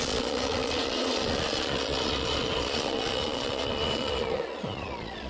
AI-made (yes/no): yes